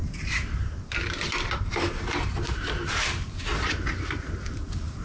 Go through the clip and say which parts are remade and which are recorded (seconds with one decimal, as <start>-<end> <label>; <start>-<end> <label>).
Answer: 0.0-5.0 remade